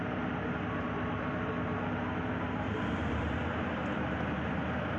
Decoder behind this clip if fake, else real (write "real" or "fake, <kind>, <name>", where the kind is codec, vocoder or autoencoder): fake, vocoder, BigVGAN v2